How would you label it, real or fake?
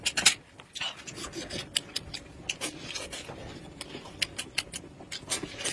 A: real